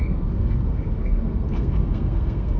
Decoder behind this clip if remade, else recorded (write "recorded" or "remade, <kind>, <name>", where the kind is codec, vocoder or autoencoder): remade, codec, SNAC